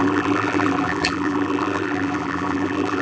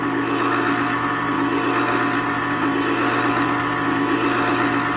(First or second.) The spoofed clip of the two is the first